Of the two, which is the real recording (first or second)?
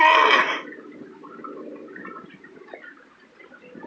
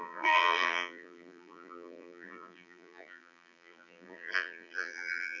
first